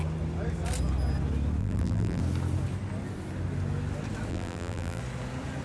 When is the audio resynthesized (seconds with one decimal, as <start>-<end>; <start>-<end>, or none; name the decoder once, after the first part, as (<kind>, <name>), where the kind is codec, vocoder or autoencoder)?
1.6-2.2 (vocoder, BigVGAN v2); 4.3-5.0